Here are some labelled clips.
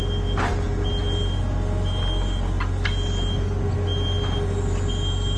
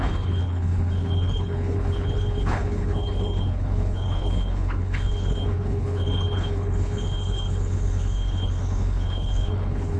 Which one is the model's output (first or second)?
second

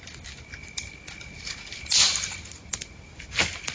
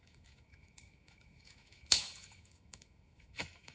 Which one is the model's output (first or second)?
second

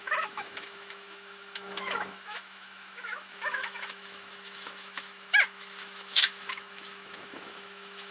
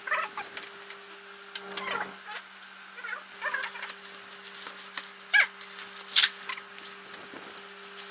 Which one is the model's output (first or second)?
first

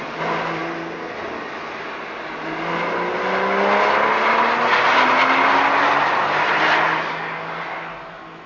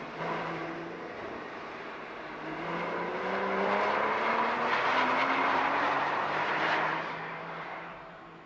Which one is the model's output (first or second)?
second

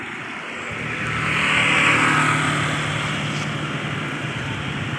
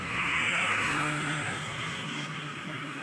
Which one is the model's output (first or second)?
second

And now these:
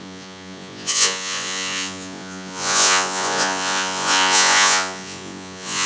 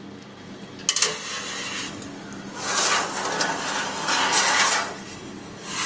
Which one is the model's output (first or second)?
first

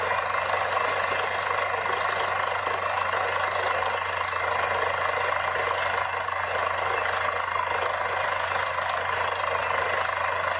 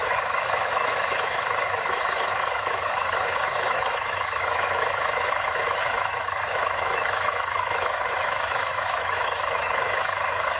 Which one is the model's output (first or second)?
second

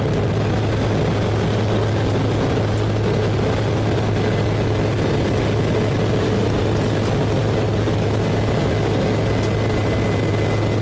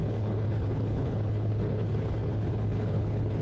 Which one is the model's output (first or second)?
second